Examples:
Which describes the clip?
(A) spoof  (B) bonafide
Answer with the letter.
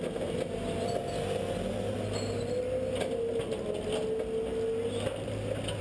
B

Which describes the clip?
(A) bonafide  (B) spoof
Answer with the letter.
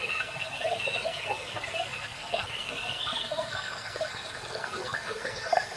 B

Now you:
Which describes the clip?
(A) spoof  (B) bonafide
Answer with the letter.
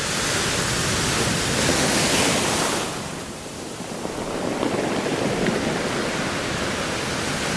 B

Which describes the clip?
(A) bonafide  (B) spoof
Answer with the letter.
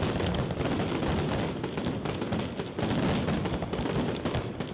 A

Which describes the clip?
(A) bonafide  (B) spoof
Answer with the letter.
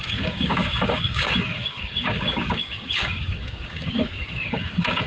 B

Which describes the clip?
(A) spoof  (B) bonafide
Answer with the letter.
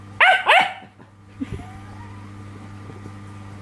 B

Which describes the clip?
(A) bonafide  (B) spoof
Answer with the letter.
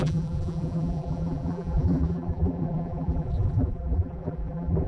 B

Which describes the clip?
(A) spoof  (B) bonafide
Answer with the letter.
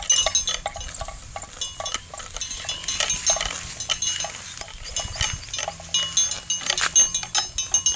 B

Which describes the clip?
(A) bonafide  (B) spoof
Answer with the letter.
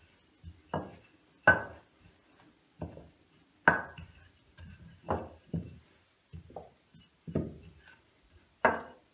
A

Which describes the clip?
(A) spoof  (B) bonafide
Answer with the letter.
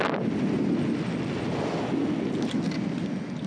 B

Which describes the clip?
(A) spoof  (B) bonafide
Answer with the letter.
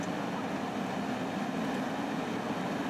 B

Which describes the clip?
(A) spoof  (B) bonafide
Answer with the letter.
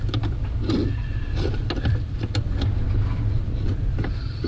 B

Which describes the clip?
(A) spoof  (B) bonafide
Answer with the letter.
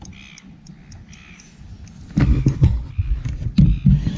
B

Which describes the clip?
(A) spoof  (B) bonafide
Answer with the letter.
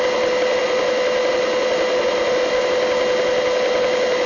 B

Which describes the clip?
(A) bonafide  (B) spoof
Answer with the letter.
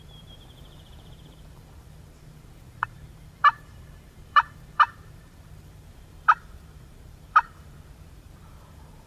B